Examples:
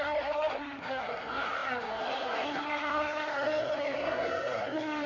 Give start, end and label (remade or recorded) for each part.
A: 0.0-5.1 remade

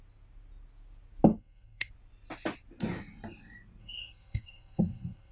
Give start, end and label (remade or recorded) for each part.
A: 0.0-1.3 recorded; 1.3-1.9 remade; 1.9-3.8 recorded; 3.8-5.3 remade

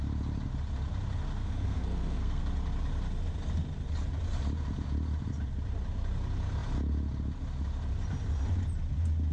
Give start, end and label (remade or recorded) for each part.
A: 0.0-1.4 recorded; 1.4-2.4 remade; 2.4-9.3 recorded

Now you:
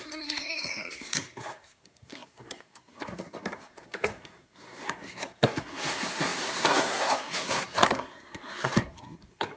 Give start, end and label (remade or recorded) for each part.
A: 0.0-9.6 remade